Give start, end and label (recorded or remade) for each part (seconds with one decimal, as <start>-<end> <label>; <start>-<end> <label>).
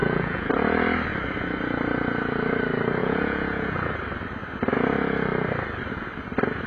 0.0-0.5 remade; 0.5-3.0 recorded; 3.0-3.9 remade; 3.9-6.7 recorded